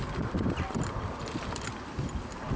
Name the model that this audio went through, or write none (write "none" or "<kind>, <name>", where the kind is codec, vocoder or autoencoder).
none